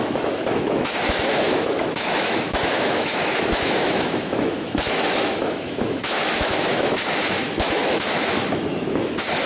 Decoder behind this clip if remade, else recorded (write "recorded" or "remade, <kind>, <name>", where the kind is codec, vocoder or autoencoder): remade, autoencoder, DAC-VAE